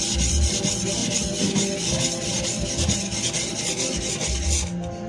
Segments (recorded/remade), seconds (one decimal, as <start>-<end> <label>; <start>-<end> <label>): 0.0-5.1 recorded

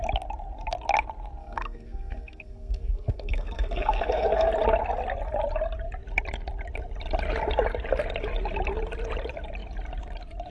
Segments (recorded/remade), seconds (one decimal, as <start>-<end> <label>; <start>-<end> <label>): 0.0-1.4 recorded; 1.4-4.5 remade; 4.5-10.5 recorded

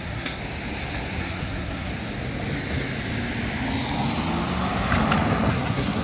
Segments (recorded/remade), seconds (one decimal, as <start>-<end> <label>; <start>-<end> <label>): 0.0-0.4 remade; 0.4-1.2 recorded; 1.2-1.9 remade; 1.9-5.5 recorded; 5.5-6.0 remade

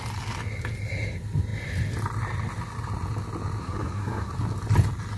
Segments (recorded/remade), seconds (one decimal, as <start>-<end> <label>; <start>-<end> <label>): 0.0-3.6 recorded; 3.6-4.3 remade; 4.3-5.2 recorded